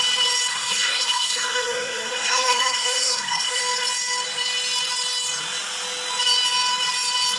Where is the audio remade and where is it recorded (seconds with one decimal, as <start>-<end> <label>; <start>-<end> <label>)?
0.0-0.5 recorded; 0.5-3.6 remade; 3.6-7.4 recorded